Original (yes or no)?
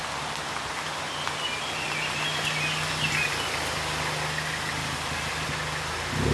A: yes